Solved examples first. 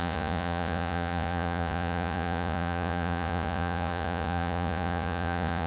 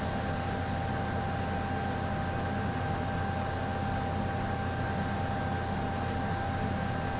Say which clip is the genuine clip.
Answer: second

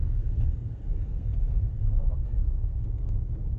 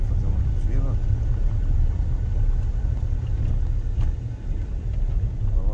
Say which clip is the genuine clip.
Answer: second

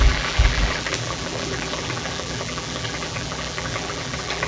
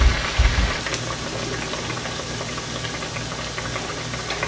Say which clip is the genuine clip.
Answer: second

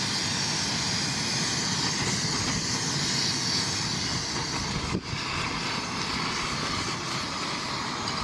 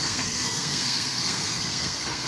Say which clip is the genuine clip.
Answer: first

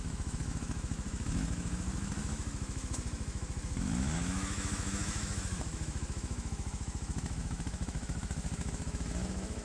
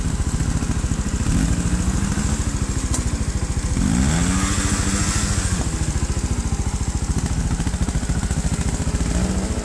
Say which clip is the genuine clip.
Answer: second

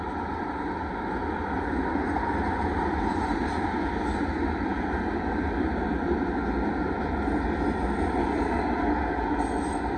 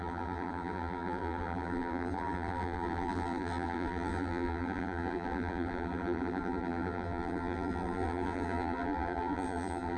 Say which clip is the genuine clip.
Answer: first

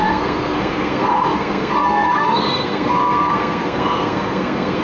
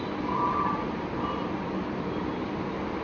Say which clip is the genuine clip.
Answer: second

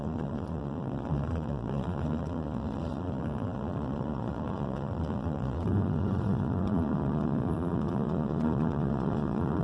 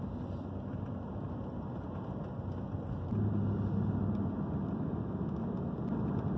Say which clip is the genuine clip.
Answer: second